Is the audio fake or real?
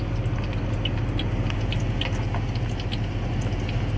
real